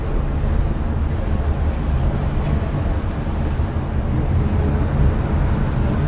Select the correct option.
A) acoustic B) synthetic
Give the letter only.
A